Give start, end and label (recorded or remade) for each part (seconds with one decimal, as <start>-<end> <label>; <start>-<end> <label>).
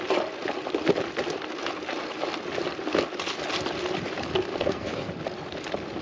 0.0-4.5 recorded; 4.5-5.1 remade; 5.1-6.0 recorded